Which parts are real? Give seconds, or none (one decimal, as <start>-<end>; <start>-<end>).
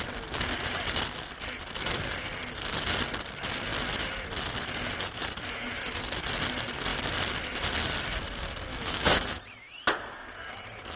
0.0-8.7; 9.4-11.0